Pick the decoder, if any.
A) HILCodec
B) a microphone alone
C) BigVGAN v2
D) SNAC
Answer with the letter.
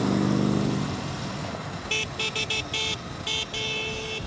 B